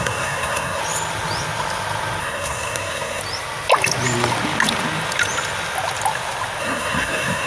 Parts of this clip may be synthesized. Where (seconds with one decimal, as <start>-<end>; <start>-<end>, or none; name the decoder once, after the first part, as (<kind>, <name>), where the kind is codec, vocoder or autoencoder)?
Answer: 0.0-0.8 (codec, SNAC); 2.2-3.2; 6.6-7.5